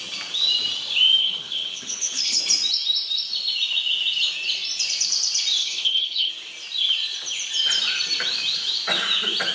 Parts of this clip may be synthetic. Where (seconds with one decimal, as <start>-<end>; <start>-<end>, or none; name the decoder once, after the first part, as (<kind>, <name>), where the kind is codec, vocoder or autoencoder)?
1.2-2.4 (codec, HILCodec); 5.6-6.3